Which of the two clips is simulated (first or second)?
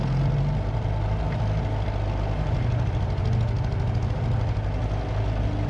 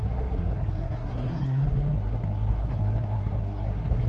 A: second